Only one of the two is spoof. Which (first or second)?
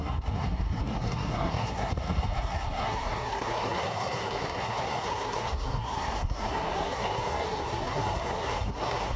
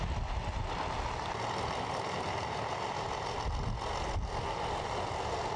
first